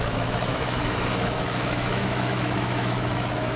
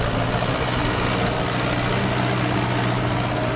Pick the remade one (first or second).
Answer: first